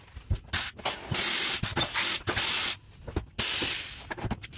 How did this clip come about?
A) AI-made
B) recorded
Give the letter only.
B